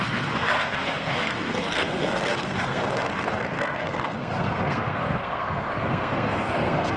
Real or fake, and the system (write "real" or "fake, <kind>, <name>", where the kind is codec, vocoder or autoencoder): fake, codec, SNAC